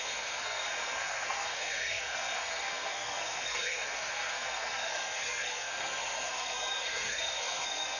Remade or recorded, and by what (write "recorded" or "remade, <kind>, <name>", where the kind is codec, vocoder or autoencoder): remade, codec, SNAC